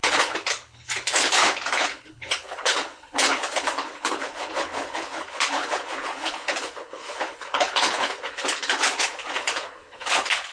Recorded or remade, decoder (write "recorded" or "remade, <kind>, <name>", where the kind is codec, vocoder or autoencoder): remade, codec, HILCodec